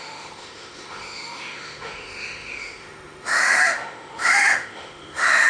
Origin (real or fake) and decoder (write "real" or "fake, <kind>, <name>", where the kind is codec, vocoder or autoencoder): fake, autoencoder, DAC-VAE